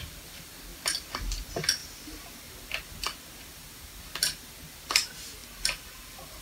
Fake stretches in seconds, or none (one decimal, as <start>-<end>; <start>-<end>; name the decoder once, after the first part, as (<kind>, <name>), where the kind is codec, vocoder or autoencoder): none